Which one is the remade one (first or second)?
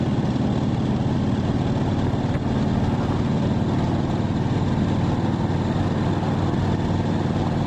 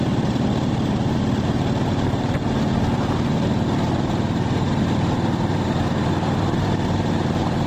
second